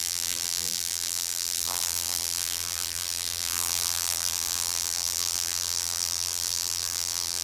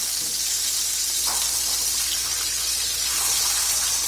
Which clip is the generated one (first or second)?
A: first